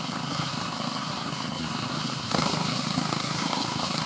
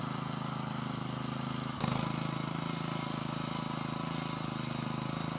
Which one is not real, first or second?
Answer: first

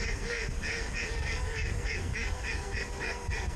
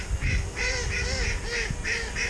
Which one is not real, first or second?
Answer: first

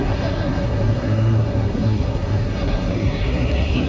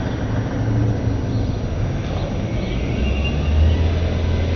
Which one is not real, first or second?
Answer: first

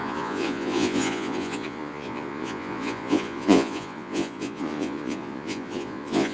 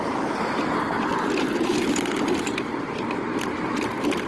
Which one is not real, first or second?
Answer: first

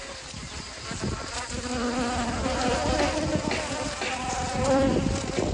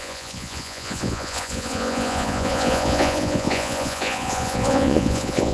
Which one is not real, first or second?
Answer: second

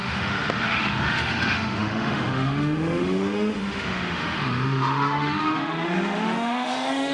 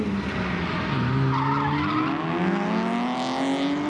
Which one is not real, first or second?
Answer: first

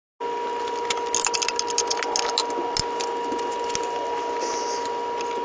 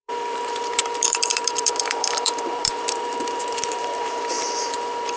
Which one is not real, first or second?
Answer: second